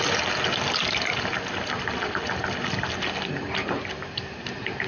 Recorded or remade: recorded